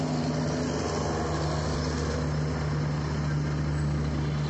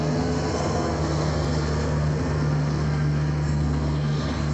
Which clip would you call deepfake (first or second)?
second